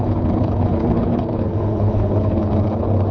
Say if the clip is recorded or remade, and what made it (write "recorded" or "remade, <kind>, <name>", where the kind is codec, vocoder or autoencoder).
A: remade, codec, HILCodec